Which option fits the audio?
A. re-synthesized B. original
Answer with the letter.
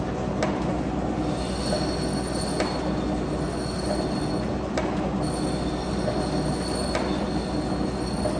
B